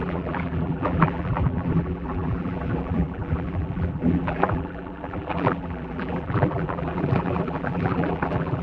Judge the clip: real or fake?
fake